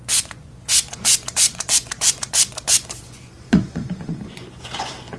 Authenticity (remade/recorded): remade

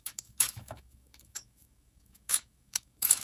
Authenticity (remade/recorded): remade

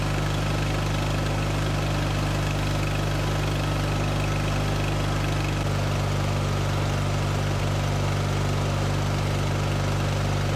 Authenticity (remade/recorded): recorded